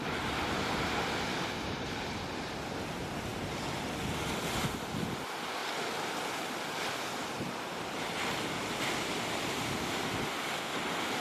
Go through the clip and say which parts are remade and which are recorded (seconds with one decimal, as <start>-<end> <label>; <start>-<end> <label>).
0.0-7.2 recorded; 7.2-8.3 remade; 8.3-11.2 recorded